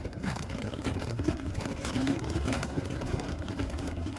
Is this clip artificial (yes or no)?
yes